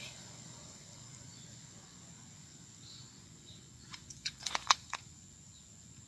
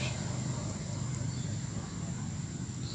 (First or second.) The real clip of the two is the second